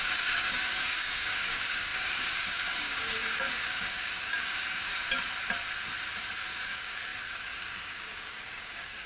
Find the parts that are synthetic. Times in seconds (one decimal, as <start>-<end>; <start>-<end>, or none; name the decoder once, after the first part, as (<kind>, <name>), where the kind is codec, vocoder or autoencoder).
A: 0.0-4.9 (codec, DAC); 6.4-9.1